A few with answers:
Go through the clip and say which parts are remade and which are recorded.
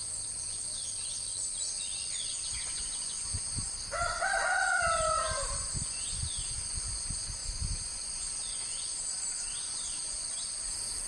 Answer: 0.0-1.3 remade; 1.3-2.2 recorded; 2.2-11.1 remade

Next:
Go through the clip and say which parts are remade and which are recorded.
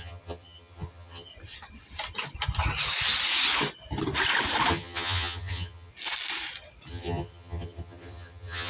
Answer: 0.0-1.3 remade; 1.3-4.7 recorded; 4.7-5.9 remade; 5.9-6.9 recorded; 6.9-8.7 remade